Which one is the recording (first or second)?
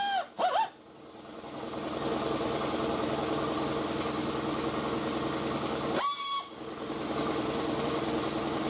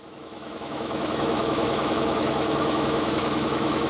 first